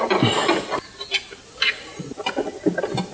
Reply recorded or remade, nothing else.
recorded